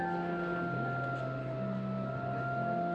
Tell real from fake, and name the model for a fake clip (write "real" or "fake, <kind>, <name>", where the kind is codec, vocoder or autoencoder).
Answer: real